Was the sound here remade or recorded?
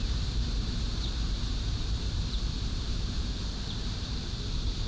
remade